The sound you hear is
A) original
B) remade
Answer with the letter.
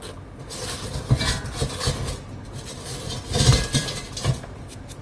A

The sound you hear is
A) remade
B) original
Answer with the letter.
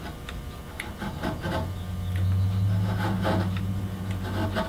B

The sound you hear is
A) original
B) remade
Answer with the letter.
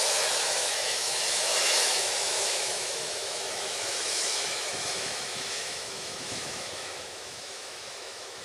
B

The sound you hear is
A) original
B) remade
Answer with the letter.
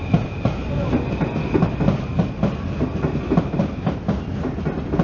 A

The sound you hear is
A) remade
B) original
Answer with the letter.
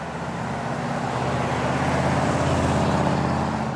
B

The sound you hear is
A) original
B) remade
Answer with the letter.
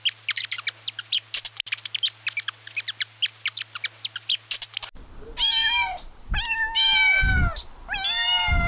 A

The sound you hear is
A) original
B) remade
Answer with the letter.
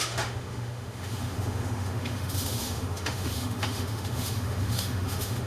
B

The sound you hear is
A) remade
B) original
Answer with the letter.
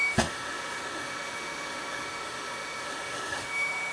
A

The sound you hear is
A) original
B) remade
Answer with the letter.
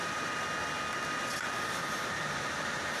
A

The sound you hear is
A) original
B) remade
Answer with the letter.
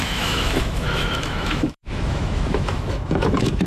B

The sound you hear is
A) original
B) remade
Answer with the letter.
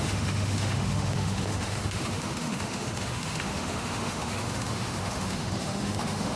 B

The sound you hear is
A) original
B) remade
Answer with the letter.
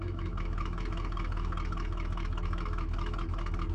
B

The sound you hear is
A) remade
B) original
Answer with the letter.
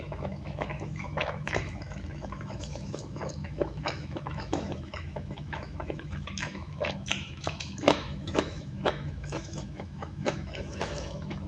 A